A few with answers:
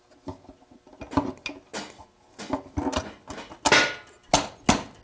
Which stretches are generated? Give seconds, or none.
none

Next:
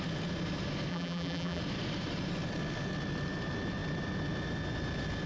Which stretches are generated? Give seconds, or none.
0.9-1.6 (vocoder, BigVGAN v2)

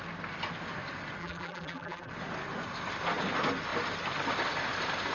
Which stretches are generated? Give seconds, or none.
1.2-2.1 (vocoder, BigVGAN v2)

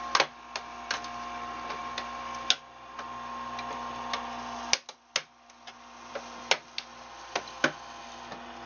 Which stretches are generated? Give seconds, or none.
none

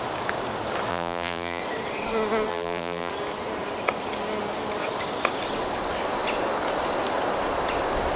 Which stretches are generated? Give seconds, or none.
0.9-1.6 (vocoder, BigVGAN v2); 2.5-3.1